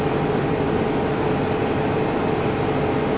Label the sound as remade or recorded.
recorded